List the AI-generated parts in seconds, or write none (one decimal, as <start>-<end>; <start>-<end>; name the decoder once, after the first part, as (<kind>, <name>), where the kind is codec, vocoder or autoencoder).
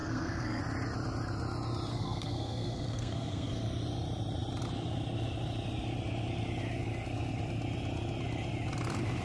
0.0-0.6 (codec, SNAC); 1.9-3.6